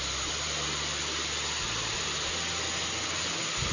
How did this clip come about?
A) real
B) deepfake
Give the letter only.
A